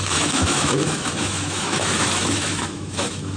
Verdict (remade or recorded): remade